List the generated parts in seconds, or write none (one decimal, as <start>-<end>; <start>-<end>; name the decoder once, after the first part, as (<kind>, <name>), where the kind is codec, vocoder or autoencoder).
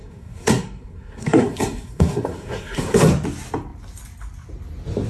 0.0-3.1 (codec, SNAC)